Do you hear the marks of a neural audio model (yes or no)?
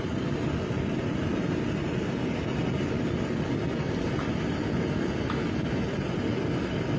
no